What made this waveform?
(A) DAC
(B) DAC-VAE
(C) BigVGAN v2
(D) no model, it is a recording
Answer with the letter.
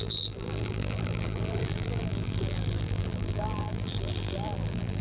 C